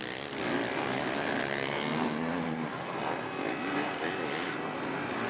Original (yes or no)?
yes